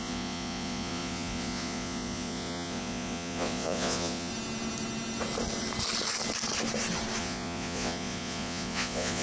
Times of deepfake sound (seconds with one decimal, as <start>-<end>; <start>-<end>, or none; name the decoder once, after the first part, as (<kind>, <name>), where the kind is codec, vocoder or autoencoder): 0.0-4.3 (vocoder, Vocos); 7.2-9.2